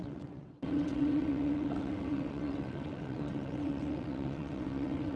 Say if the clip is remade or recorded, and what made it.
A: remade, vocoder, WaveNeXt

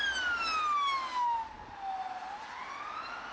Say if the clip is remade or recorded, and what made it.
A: recorded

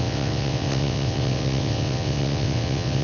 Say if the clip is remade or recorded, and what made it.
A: remade, vocoder, WaveNeXt